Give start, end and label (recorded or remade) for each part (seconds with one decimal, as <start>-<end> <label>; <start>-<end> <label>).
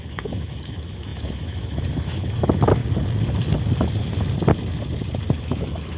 0.0-2.8 remade; 2.8-5.4 recorded; 5.4-6.0 remade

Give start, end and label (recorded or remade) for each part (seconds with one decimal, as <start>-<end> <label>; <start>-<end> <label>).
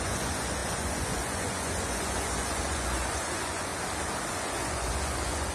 0.0-3.7 remade; 3.7-4.3 recorded; 4.3-5.5 remade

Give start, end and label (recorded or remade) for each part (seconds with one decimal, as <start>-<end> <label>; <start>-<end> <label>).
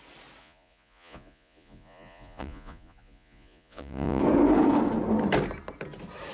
0.0-0.4 recorded; 0.4-4.2 remade; 4.2-6.3 recorded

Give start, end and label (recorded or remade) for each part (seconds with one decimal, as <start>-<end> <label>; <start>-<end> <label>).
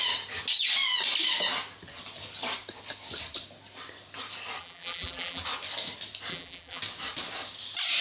0.0-4.6 recorded; 4.6-5.4 remade; 5.4-6.3 recorded; 6.3-6.8 remade; 6.8-8.0 recorded